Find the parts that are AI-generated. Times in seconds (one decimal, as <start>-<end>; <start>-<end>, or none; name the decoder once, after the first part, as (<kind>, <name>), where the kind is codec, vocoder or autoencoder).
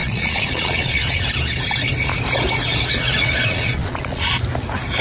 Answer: 0.0-1.3 (vocoder, Vocos); 2.7-4.3